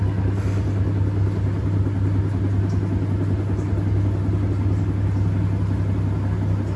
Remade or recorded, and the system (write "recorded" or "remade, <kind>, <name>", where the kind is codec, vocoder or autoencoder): recorded